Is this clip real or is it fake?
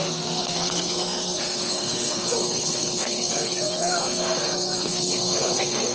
fake